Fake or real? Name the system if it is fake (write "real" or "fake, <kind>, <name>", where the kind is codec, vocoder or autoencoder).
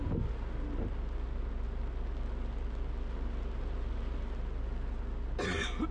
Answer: real